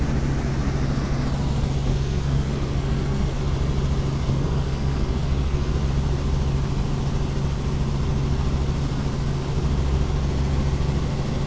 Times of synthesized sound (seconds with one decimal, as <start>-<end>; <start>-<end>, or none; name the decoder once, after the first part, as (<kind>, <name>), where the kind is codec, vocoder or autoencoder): 1.9-3.4 (codec, SNAC); 4.3-5.7